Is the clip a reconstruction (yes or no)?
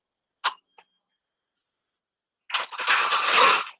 no